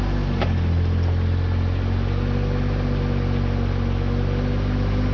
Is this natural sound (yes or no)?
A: yes